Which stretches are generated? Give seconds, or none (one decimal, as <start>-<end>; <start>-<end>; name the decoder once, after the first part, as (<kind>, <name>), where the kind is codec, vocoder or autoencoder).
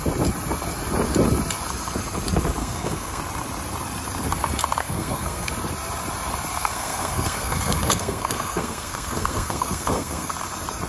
2.6-3.2 (codec, SNAC); 4.8-5.5; 6.6-10.3